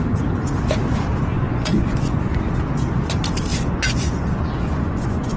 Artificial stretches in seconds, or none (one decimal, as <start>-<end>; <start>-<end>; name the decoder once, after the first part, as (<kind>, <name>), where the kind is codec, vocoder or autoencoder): 1.3-2.3 (vocoder, Vocos); 3.5-5.4

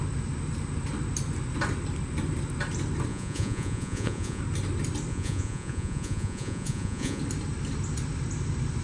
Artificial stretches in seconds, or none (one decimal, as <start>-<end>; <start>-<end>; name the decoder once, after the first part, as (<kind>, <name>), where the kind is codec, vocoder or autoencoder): 3.1-4.4 (vocoder, Vocos); 5.1-7.2

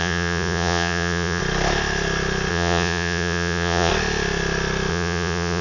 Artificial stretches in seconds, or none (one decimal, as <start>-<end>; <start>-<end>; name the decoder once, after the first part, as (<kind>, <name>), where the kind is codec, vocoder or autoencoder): 0.0-1.4 (vocoder, Vocos); 2.5-3.9; 4.9-5.6

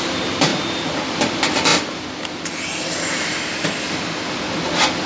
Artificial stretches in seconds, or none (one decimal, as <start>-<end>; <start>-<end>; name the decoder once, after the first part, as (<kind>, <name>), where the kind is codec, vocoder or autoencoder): none

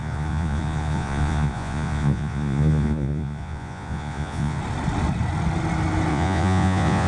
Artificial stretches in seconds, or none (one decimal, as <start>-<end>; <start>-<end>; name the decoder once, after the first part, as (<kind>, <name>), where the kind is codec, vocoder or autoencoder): 0.0-4.6 (vocoder, Vocos); 6.1-7.1

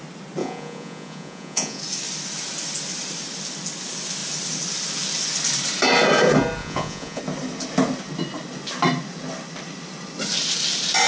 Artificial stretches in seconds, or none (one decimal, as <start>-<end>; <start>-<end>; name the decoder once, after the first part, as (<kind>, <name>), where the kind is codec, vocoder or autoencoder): 0.4-1.8 (vocoder, Vocos); 6.6-7.2

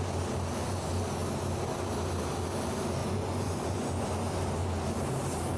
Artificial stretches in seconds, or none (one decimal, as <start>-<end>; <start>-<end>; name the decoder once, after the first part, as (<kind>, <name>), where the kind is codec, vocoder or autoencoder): 3.0-4.0 (vocoder, Vocos)

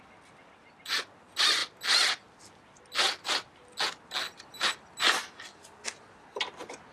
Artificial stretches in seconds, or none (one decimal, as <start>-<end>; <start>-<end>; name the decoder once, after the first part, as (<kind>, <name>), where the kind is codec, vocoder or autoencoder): none